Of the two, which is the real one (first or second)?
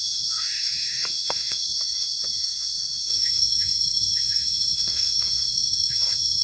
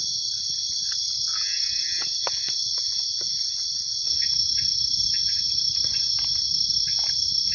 second